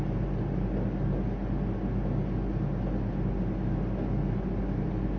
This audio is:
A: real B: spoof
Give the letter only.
A